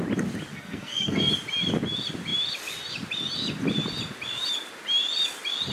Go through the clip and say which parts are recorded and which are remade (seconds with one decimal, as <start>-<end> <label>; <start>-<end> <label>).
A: 0.0-0.5 recorded; 0.5-1.3 remade; 1.3-5.7 recorded